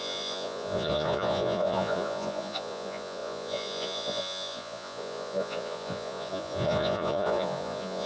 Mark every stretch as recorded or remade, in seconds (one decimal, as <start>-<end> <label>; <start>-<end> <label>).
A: 0.0-8.1 remade